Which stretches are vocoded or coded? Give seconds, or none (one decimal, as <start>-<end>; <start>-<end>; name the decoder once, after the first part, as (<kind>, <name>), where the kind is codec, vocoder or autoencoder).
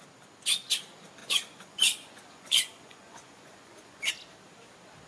1.2-4.1 (vocoder, Vocos)